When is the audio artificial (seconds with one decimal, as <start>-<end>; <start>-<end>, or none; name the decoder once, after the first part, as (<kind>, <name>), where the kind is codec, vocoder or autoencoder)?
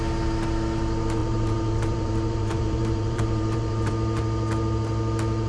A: 1.2-3.9 (vocoder, BigVGAN v2)